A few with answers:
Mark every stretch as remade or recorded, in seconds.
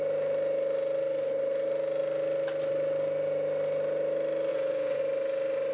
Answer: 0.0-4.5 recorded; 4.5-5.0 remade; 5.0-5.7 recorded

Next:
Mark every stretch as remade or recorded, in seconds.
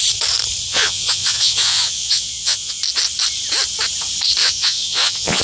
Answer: 0.0-0.7 recorded; 0.7-2.8 remade; 2.8-4.4 recorded; 4.4-5.4 remade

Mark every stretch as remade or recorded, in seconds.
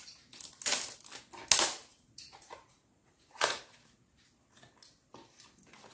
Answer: 0.0-1.9 recorded; 1.9-3.6 remade; 3.6-5.9 recorded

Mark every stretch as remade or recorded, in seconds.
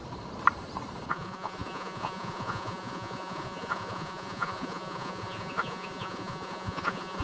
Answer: 0.0-1.1 recorded; 1.1-7.2 remade